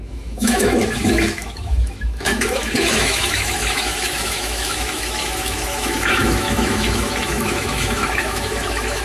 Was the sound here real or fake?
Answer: fake